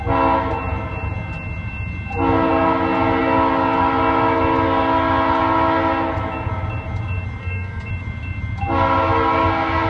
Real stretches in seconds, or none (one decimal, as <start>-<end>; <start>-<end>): 0.0-7.4; 7.9-9.9